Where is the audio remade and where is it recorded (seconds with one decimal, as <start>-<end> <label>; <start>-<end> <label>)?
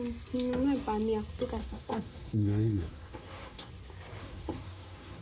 0.0-1.6 recorded; 1.6-3.7 remade; 3.7-4.2 recorded; 4.2-5.2 remade